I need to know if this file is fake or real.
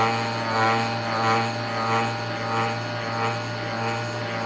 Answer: real